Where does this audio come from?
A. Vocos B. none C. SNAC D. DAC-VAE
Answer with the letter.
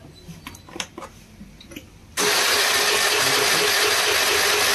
B